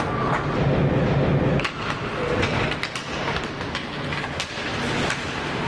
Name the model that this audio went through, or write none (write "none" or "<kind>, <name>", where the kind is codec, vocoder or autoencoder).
none